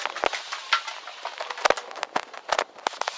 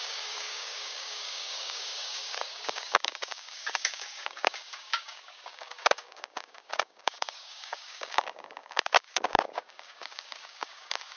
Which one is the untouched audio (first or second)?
first